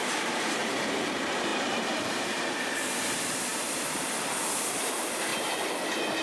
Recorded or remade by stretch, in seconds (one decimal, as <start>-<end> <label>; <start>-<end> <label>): 0.0-5.3 remade; 5.3-6.2 recorded